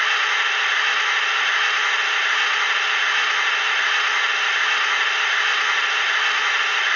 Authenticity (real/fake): real